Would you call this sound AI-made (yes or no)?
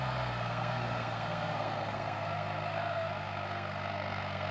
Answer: yes